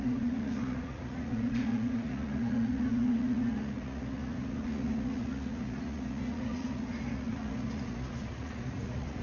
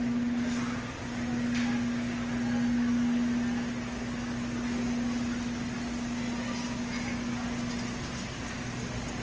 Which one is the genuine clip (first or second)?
second